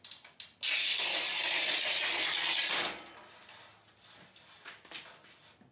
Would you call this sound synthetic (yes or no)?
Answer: no